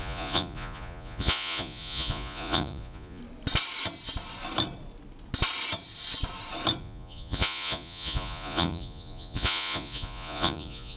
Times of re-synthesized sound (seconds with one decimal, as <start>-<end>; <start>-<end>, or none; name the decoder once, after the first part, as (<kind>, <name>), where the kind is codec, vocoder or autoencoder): 0.0-3.2 (vocoder, Vocos); 6.8-11.0